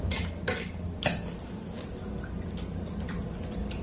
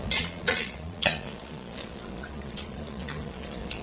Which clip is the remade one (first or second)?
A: second